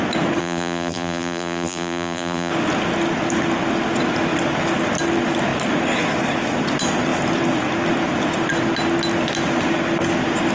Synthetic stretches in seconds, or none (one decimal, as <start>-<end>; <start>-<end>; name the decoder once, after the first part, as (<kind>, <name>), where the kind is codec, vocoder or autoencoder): 0.4-2.5 (vocoder, BigVGAN v2)